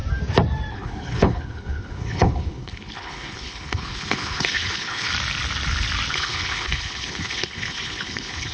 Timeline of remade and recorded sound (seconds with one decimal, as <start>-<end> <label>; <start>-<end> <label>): 0.0-0.7 recorded; 0.7-5.1 remade; 5.1-6.1 recorded; 6.1-8.5 remade